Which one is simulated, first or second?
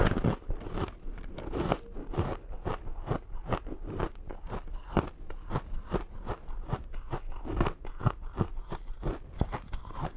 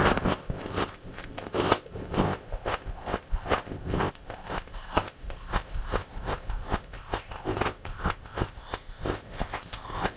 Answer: second